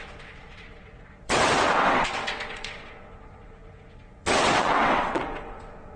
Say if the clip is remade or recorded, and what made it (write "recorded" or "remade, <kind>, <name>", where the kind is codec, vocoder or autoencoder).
remade, vocoder, WaveNeXt